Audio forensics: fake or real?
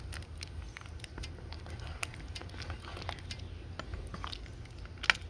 real